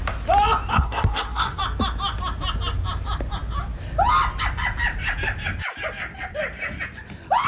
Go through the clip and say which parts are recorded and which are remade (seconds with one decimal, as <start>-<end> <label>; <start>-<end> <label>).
0.0-0.7 recorded; 0.7-1.6 remade; 1.6-7.5 recorded